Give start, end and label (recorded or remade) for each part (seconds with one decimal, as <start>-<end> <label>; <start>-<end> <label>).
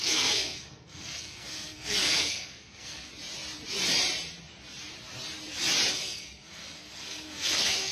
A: 0.0-3.1 remade; 3.1-5.9 recorded; 5.9-7.9 remade